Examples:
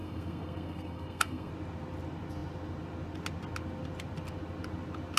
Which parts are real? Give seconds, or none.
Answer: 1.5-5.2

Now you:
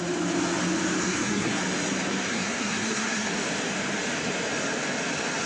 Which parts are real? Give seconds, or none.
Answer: 0.0-1.0; 1.6-2.3; 3.3-5.5